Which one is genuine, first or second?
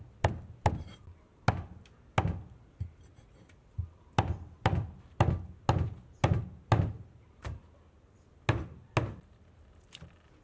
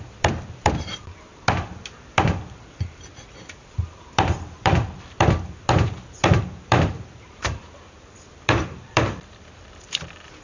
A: first